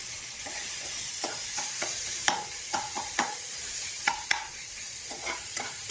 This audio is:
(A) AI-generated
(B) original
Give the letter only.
A